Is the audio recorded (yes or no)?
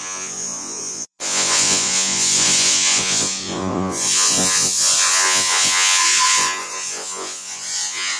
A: no